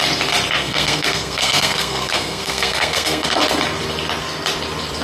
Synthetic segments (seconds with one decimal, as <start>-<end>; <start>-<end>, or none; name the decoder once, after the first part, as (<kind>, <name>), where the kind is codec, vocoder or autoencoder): 0.6-3.4 (codec, SNAC)